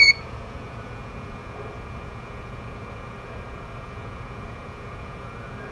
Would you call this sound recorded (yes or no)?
no